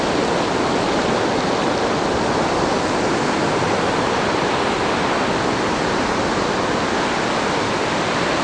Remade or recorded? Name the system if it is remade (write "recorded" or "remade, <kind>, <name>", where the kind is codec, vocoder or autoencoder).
recorded